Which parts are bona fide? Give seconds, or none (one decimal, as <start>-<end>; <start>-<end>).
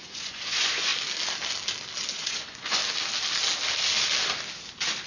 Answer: 0.9-2.1; 2.8-5.1